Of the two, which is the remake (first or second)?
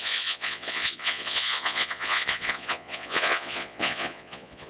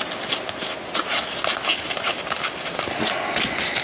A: first